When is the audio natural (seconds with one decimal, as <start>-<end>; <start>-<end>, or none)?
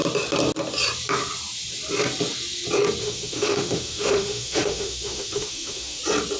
0.0-3.0; 6.0-6.4